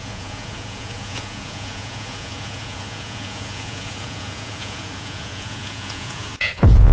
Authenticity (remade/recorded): remade